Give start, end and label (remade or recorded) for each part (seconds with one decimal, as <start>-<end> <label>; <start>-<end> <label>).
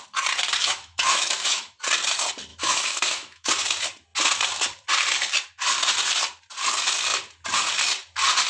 0.0-0.6 recorded; 0.6-1.8 remade; 1.8-2.5 recorded; 2.5-3.5 remade; 3.5-8.5 recorded